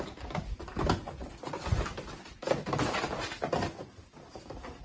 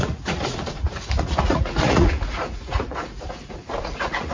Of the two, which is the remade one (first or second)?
second